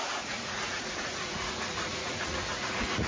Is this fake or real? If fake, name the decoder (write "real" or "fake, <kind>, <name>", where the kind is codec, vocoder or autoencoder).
fake, vocoder, Vocos